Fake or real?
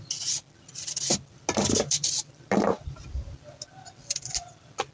real